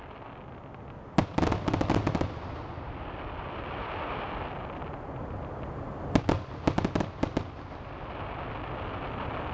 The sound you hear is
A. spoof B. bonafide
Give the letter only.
B